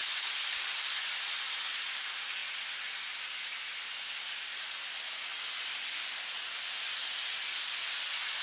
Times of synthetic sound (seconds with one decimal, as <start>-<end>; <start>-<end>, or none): none

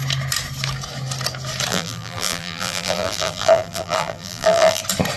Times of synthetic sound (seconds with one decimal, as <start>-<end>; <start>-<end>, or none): 1.7-4.8

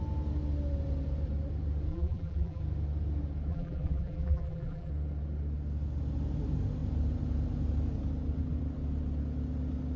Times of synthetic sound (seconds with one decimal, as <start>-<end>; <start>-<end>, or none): 1.9-2.6; 3.5-4.9

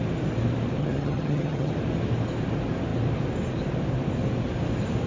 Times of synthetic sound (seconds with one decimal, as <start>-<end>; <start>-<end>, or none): 0.8-1.7

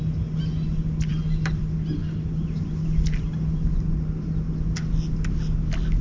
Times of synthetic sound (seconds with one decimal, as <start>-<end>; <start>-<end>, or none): none

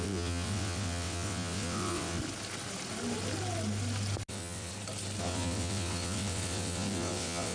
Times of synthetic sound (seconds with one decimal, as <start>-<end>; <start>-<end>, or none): 0.0-2.2; 4.3-4.7; 5.2-7.5

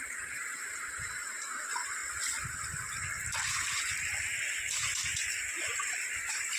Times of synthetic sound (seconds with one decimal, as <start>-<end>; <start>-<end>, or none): 0.0-2.0; 5.6-6.6

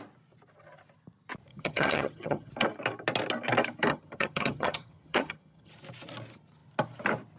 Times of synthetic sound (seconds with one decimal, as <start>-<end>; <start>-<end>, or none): 1.5-2.5; 3.9-5.7